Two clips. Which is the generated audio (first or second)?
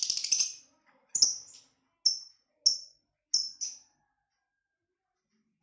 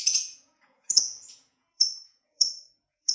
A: second